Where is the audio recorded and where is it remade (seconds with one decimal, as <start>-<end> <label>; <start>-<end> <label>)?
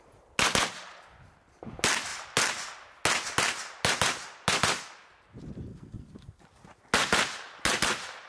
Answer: 0.0-5.7 recorded; 5.7-6.4 remade; 6.4-8.3 recorded